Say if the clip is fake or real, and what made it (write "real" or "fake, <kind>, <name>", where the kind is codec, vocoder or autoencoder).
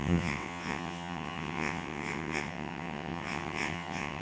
fake, vocoder, WaveNeXt